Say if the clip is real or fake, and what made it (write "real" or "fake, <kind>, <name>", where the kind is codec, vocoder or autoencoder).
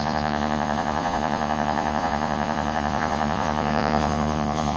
fake, vocoder, Vocos